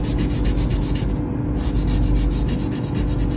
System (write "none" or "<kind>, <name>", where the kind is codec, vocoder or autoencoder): none